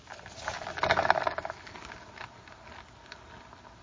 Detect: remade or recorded recorded